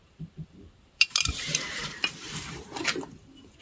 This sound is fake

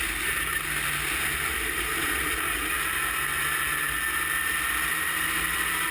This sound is real